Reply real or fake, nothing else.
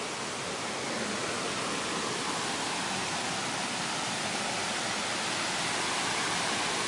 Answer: real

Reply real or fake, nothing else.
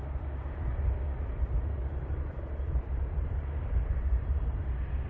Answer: fake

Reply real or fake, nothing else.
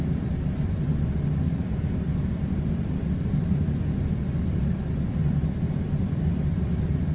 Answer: fake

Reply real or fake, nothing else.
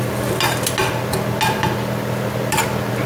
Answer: real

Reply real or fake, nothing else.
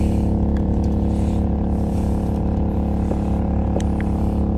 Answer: fake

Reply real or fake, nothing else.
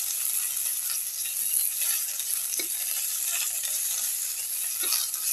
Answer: real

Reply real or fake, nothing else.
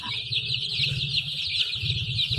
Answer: real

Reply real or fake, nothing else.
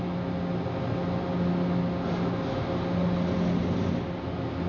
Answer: real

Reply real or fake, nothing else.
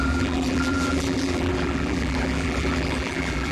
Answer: fake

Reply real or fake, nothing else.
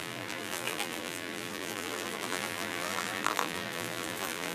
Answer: fake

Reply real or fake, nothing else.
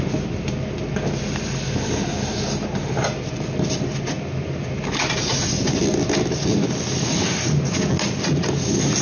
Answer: real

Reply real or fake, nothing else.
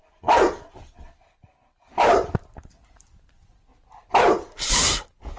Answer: fake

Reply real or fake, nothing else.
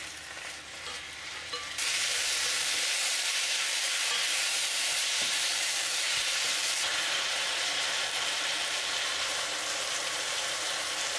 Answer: fake